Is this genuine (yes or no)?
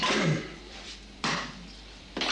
no